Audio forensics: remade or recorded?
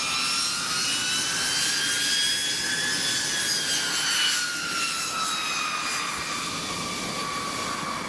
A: recorded